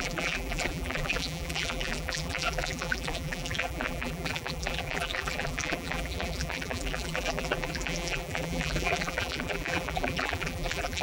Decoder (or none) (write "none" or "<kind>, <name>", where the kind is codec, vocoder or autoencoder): vocoder, BigVGAN v2